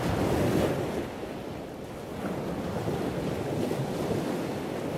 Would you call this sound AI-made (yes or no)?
no